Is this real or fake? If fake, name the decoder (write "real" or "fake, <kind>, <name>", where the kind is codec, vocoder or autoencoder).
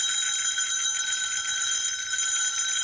real